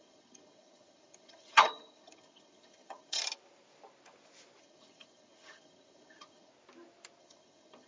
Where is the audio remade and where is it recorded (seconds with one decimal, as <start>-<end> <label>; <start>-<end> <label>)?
0.0-3.2 remade; 3.2-4.6 recorded; 4.6-6.5 remade; 6.5-7.2 recorded; 7.2-7.9 remade